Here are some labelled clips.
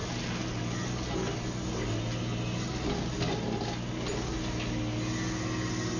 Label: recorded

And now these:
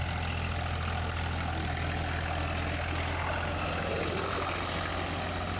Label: recorded